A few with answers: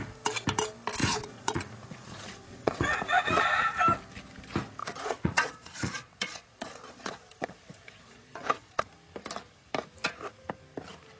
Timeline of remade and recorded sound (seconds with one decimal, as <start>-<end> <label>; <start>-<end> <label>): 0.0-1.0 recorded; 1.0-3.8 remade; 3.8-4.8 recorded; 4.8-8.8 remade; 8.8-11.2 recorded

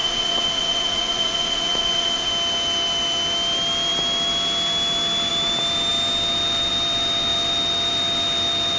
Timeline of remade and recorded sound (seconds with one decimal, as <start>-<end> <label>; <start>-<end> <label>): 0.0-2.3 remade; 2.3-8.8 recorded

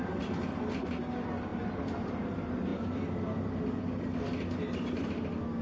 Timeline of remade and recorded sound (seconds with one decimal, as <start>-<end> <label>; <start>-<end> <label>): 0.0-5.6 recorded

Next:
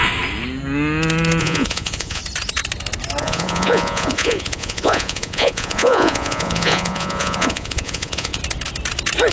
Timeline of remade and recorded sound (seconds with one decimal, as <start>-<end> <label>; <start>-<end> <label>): 0.0-1.4 recorded; 1.4-2.2 remade; 2.2-3.2 recorded; 3.2-8.4 remade; 8.4-9.3 recorded

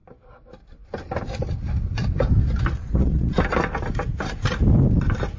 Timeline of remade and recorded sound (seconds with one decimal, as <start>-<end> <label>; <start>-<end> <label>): 0.0-2.8 recorded; 2.8-3.3 remade; 3.3-5.4 recorded

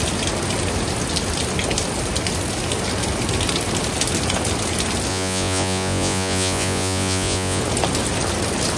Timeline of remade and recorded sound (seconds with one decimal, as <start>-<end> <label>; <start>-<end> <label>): 0.0-5.1 recorded; 5.1-7.6 remade; 7.6-8.8 recorded

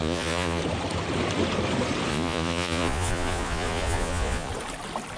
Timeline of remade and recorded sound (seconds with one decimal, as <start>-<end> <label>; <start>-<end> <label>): 0.0-0.6 remade; 0.6-2.1 recorded; 2.1-4.5 remade; 4.5-5.2 recorded

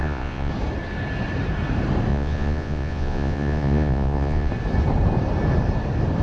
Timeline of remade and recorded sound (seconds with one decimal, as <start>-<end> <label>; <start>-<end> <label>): 0.0-0.5 remade; 0.5-2.1 recorded; 2.1-4.5 remade; 4.5-6.2 recorded